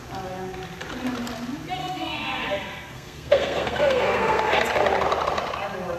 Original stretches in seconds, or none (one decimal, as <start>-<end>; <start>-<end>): 0.0-1.8; 4.6-6.0